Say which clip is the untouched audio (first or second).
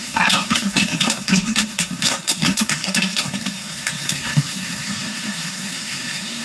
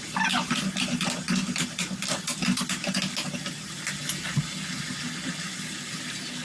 second